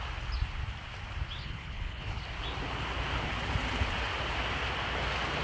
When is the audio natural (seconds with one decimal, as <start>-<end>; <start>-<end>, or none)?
0.0-1.4; 2.2-5.4